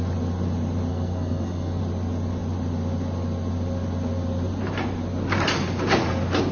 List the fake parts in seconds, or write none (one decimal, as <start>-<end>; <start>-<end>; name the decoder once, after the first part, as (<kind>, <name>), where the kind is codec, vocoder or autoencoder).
0.9-1.8 (codec, SNAC)

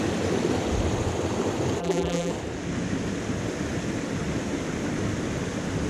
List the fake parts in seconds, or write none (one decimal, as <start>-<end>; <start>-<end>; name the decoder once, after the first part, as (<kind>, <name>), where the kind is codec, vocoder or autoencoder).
1.8-2.3 (vocoder, BigVGAN v2)

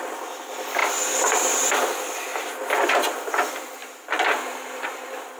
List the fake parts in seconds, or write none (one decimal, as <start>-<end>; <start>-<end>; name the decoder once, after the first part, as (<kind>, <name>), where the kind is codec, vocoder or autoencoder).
3.8-5.4 (vocoder, BigVGAN v2)

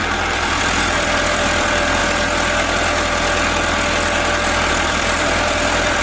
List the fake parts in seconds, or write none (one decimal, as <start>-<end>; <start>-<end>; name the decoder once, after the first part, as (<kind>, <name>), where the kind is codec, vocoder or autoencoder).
0.0-2.0 (vocoder, BigVGAN v2); 4.7-6.0

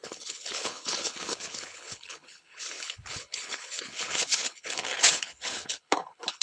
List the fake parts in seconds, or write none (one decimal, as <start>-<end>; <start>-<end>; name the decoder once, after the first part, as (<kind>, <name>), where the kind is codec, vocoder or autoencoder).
0.0-6.4 (codec, HILCodec)

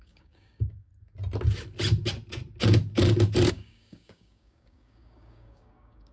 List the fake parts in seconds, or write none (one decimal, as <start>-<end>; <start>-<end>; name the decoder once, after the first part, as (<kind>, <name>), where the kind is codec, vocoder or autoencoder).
0.0-0.9 (codec, DAC); 3.5-6.1